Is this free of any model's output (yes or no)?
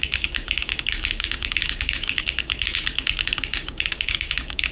no